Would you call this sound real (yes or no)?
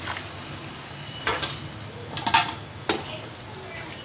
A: yes